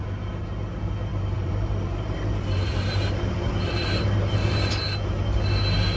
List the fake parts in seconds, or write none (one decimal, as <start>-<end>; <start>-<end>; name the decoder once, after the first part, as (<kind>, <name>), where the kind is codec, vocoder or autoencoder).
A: 1.1-4.7 (vocoder, BigVGAN v2)